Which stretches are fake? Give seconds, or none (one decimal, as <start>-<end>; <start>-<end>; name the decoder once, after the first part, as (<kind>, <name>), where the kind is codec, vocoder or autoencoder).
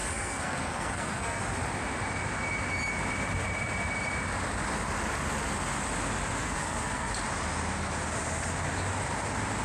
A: 0.0-1.4 (codec, SNAC); 6.4-7.1